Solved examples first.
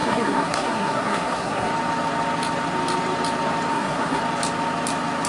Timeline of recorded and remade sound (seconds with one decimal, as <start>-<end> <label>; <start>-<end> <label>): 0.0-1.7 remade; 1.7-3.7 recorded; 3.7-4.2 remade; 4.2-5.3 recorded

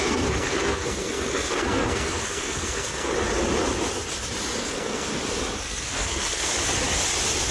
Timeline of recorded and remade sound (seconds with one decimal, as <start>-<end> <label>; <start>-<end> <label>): 0.0-3.1 remade; 3.1-4.6 recorded; 4.6-5.1 remade; 5.1-5.6 recorded; 5.6-6.5 remade; 6.5-7.5 recorded

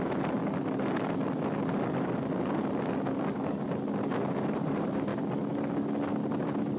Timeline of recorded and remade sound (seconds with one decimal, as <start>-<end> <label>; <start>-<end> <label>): 0.0-0.4 remade; 0.4-4.5 recorded; 4.5-5.1 remade; 5.1-6.8 recorded

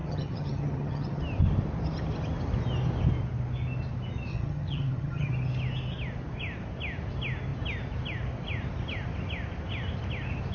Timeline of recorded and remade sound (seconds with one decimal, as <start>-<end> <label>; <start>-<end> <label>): 0.0-1.2 remade; 1.2-4.3 recorded; 4.3-5.3 remade; 5.3-10.5 recorded

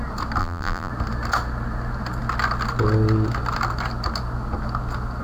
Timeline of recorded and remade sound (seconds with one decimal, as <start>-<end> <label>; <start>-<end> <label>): 0.0-0.4 recorded; 0.4-0.9 remade; 0.9-5.2 recorded

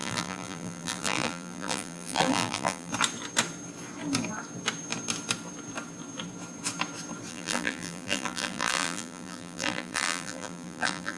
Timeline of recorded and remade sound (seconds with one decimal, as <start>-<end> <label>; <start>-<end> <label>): 0.0-2.9 remade; 2.9-7.3 recorded; 7.3-11.2 remade

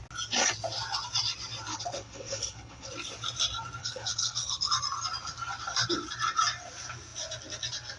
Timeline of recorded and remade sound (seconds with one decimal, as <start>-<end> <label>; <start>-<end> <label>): 0.0-1.7 recorded; 1.7-2.9 remade; 2.9-3.8 recorded; 3.8-4.7 remade; 4.7-8.0 recorded